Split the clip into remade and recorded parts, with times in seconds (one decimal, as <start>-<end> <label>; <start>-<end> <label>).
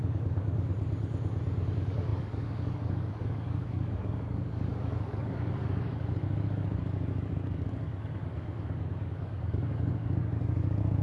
0.0-0.7 remade; 0.7-1.7 recorded; 1.7-11.0 remade